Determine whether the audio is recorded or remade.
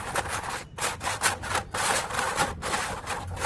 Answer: recorded